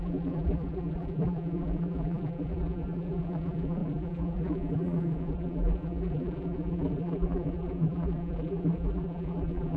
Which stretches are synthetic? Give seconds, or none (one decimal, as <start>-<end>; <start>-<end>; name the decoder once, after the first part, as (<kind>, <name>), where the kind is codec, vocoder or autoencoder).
0.0-9.8 (vocoder, BigVGAN v2)

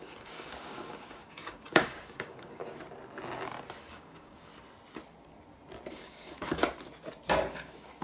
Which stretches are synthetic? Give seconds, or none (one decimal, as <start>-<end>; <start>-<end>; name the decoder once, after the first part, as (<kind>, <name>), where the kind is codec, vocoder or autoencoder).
0.0-2.6 (codec, DAC); 3.9-4.5; 5.9-6.6; 7.5-8.0